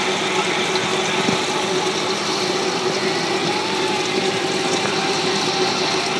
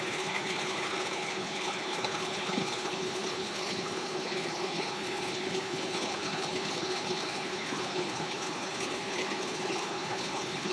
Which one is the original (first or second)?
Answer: first